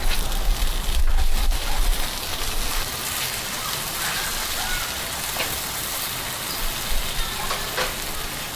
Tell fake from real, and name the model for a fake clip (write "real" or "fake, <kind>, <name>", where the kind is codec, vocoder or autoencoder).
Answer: real